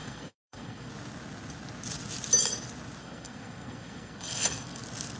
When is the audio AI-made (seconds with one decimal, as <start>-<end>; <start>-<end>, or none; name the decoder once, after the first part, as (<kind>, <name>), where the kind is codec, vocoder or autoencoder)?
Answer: 0.0-0.9 (codec, SNAC); 3.0-4.8